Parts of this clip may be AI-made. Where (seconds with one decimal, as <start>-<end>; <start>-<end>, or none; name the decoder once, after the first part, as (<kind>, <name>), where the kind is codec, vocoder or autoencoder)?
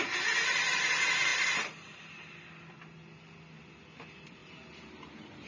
none